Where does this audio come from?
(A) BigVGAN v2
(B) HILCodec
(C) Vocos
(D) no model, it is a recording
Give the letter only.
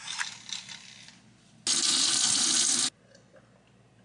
D